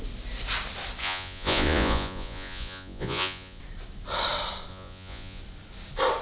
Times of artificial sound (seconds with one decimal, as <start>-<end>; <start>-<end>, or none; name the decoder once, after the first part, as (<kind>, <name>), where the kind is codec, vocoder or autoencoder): 1.0-3.6 (vocoder, Vocos); 4.7-5.4